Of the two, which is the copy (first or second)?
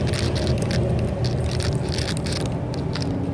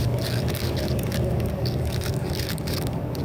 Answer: second